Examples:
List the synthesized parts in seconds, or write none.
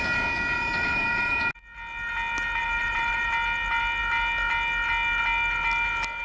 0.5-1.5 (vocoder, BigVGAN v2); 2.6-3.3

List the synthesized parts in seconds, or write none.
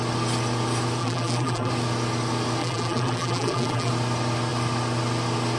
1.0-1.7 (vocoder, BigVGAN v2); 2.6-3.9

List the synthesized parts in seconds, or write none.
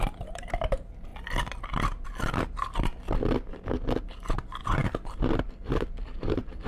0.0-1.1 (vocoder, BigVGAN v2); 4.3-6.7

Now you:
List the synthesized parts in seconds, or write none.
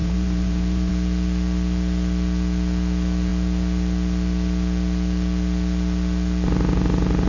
0.0-0.9 (vocoder, BigVGAN v2)